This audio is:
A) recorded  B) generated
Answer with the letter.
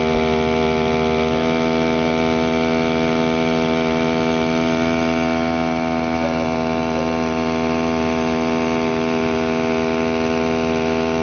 A